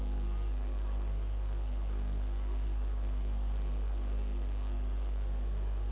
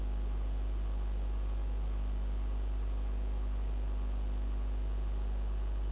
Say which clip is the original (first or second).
second